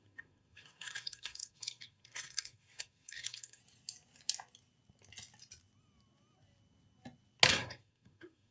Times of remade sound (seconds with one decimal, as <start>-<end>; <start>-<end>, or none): 0.0-3.6; 7.5-8.5